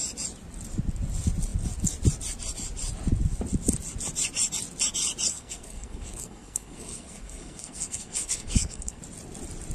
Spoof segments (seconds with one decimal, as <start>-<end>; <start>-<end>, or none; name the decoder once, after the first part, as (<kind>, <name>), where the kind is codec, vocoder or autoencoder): 5.3-9.0 (codec, SNAC)